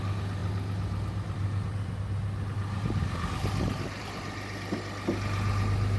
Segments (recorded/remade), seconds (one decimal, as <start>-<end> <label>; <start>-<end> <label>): 0.0-6.0 recorded